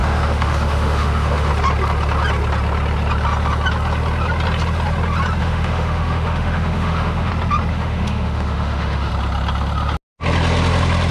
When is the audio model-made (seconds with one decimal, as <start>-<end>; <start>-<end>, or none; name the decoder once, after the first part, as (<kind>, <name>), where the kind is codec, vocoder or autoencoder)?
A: 0.0-1.5 (autoencoder, DAC-VAE); 5.4-7.3; 7.7-9.1